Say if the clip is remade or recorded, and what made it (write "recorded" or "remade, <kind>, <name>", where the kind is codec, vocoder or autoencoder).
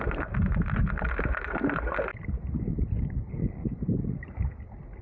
recorded